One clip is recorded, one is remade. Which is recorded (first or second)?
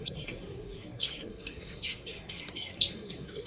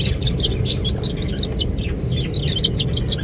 second